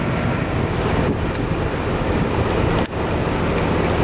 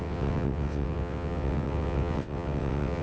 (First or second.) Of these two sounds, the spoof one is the second